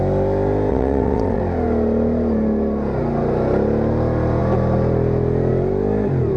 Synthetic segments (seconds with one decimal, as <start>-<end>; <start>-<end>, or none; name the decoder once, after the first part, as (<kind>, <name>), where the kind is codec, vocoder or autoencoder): 0.7-1.4 (vocoder, WaveNeXt)